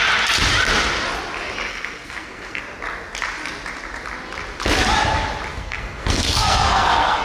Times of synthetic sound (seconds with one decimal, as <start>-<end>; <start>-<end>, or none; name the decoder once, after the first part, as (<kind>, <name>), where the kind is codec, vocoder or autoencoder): 1.7-2.6 (codec, SNAC); 5.5-7.2